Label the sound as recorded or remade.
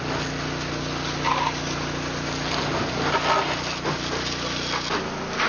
recorded